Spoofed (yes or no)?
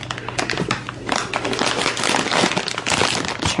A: no